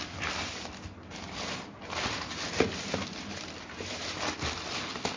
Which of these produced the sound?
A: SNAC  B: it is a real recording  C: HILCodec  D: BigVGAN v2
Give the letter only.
B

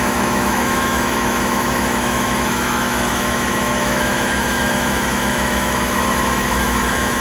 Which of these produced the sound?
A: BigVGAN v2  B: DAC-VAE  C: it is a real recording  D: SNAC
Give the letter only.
B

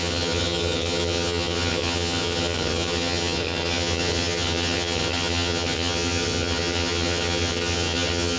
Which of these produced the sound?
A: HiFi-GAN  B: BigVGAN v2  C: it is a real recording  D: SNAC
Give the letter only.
A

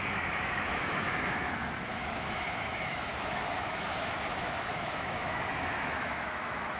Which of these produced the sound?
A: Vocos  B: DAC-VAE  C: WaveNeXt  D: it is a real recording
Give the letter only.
B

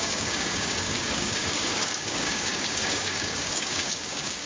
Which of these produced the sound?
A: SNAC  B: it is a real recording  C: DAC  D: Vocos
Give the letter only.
C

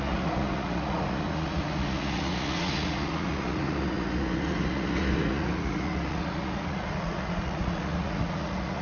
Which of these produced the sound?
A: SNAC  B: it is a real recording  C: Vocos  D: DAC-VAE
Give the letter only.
C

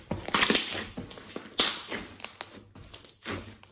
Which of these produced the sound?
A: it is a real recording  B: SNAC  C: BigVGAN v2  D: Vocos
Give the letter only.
A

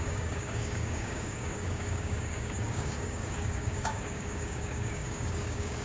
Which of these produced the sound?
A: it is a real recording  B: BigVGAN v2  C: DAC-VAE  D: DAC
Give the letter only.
D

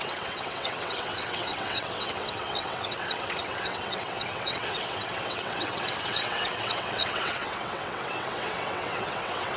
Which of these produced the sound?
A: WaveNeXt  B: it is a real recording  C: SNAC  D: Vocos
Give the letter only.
A